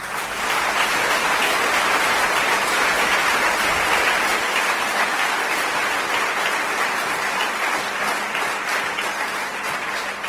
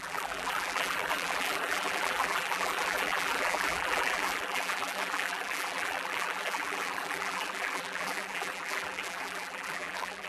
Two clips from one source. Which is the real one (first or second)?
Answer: first